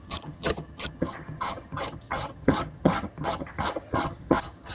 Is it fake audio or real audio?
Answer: fake